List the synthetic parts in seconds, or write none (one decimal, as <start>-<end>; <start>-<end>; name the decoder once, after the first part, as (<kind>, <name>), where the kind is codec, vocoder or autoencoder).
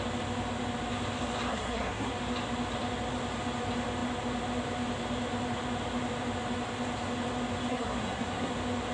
1.5-2.1 (codec, SNAC); 7.7-8.5